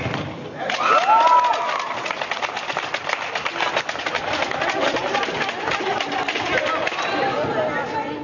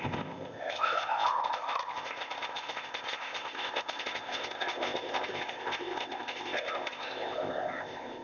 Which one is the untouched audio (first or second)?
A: first